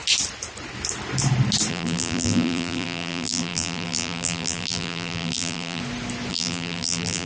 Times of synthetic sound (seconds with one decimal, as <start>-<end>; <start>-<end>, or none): 1.7-5.8; 6.3-7.3

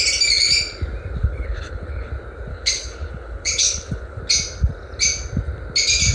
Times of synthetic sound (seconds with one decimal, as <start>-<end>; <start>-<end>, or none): 1.2-2.1; 2.5-4.2

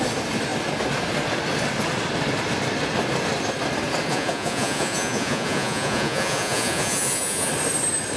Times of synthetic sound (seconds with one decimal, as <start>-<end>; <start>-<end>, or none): 4.1-7.5

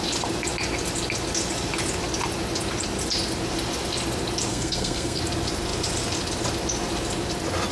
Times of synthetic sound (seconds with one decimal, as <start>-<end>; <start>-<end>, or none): 4.5-5.2

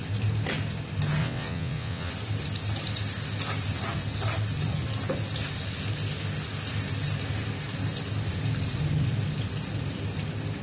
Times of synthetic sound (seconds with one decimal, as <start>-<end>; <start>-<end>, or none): 1.2-2.1

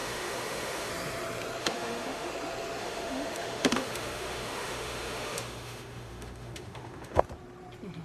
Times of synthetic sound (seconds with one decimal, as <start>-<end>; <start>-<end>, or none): 0.0-0.9; 1.6-2.3; 2.8-7.2